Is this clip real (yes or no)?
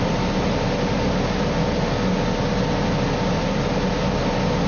yes